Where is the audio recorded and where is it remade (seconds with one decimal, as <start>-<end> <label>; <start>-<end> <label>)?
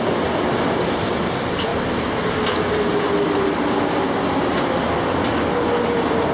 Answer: 0.0-6.3 recorded